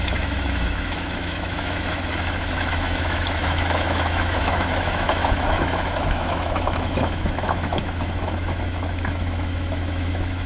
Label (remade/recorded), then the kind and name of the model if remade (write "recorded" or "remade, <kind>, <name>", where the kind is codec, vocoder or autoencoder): remade, autoencoder, DAC-VAE